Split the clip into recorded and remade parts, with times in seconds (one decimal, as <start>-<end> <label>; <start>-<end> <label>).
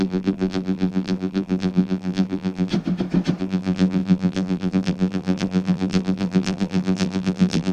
0.0-2.7 remade; 2.7-3.4 recorded; 3.4-7.7 remade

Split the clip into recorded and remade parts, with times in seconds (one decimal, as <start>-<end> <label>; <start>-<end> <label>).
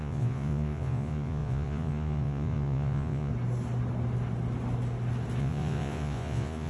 0.0-3.3 remade; 3.3-5.4 recorded; 5.4-6.7 remade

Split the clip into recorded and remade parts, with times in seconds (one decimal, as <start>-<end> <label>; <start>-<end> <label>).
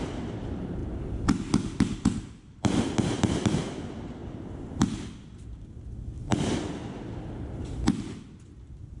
0.0-0.8 remade; 0.8-2.6 recorded; 2.6-4.2 remade; 4.2-7.6 recorded; 7.6-9.0 remade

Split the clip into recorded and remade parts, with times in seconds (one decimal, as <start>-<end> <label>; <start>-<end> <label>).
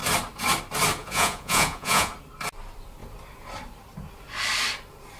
0.0-1.0 recorded; 1.0-2.1 remade; 2.1-5.2 recorded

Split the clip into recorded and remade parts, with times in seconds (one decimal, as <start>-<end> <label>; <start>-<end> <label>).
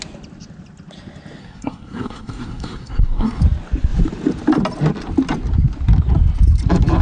0.0-1.4 recorded; 1.4-3.4 remade; 3.4-7.0 recorded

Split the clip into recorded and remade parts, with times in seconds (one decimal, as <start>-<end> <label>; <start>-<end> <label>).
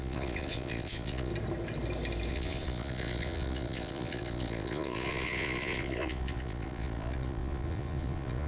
0.0-1.3 remade; 1.3-2.3 recorded; 2.3-8.5 remade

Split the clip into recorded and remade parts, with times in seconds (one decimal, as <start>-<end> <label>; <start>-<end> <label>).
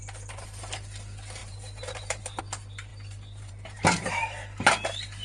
0.0-1.4 recorded; 1.4-2.4 remade; 2.4-2.9 recorded; 2.9-4.2 remade; 4.2-5.2 recorded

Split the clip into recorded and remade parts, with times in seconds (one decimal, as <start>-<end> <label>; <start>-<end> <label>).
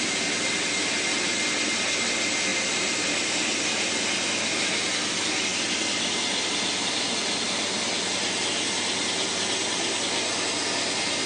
0.0-11.3 recorded